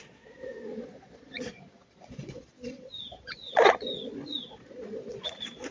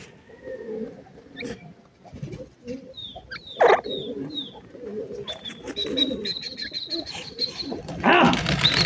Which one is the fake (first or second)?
first